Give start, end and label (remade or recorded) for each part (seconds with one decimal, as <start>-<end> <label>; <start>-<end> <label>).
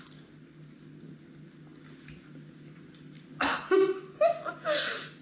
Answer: 0.0-5.2 recorded